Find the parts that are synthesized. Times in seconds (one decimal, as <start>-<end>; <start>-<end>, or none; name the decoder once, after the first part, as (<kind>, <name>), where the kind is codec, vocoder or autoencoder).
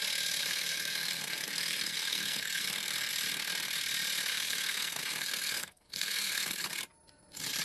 0.4-3.1 (codec, SNAC); 4.3-6.7